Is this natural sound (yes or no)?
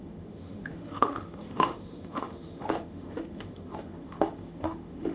no